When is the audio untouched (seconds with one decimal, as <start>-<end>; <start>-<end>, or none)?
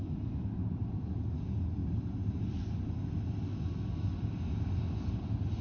0.0-1.8; 2.4-5.6